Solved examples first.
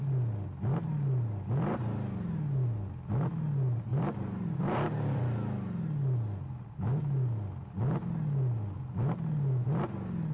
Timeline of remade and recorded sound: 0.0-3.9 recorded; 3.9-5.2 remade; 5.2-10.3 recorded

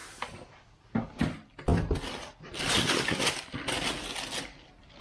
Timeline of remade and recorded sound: 0.0-5.0 recorded